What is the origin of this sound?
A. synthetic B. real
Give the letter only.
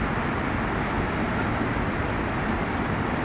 B